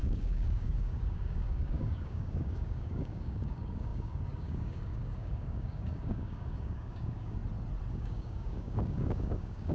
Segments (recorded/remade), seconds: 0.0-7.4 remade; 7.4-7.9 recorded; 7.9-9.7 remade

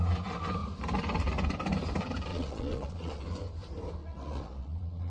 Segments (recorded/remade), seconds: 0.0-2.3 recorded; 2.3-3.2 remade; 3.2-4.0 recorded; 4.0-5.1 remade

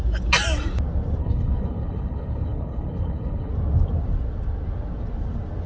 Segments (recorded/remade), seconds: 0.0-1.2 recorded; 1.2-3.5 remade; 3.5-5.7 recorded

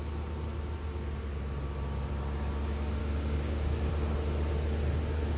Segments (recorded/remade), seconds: 0.0-3.0 recorded; 3.0-3.9 remade; 3.9-5.4 recorded

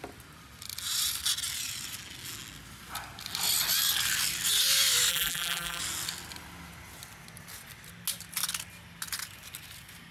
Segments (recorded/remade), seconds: 0.0-5.1 recorded; 5.1-5.8 remade; 5.8-10.1 recorded

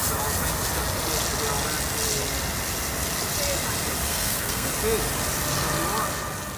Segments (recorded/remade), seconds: 0.0-4.1 recorded; 4.1-4.7 remade; 4.7-6.6 recorded